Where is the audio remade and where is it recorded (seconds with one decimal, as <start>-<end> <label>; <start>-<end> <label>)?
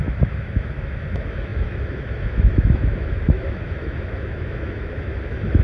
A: 0.0-5.6 remade